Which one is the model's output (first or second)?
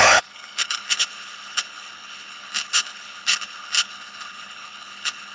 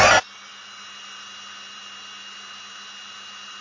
first